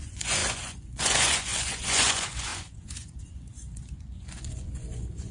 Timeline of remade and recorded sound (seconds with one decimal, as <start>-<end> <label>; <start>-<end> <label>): 0.0-5.3 remade